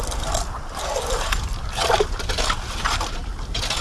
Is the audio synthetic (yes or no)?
no